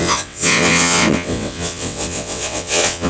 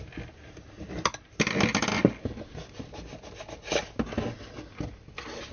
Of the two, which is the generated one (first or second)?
first